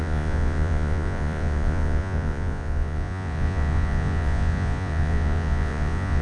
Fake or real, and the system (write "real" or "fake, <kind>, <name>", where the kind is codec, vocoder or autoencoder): fake, vocoder, Vocos